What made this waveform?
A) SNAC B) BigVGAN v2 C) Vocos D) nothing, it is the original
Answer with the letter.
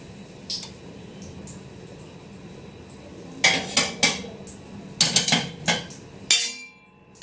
D